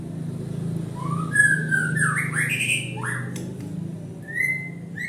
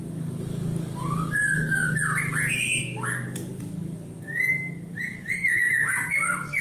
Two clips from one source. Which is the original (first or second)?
first